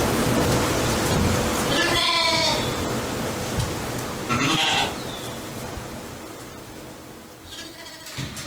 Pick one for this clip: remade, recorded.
recorded